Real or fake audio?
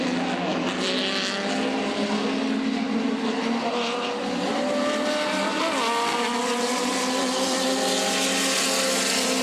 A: real